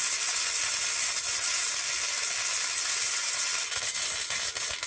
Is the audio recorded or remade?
recorded